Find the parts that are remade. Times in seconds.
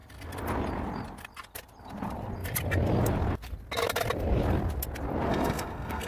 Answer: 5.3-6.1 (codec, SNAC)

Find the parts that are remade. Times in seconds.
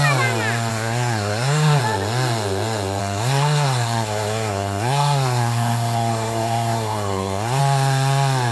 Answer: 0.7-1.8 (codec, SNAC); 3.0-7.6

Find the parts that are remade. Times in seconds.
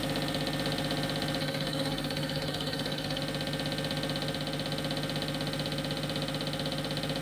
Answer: 1.4-3.2 (codec, SNAC)